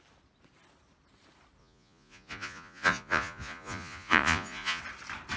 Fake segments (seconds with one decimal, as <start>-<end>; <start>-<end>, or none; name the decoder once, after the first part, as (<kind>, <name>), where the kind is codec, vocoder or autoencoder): 1.6-4.8 (vocoder, Vocos)